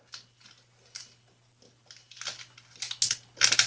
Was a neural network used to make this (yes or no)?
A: no